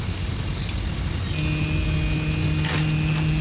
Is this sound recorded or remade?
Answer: recorded